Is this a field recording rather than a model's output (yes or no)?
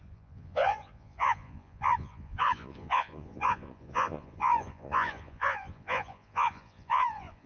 no